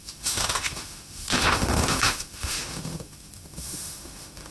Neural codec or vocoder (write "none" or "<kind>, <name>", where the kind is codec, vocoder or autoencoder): autoencoder, DAC-VAE